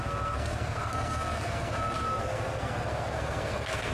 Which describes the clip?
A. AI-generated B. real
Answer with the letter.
A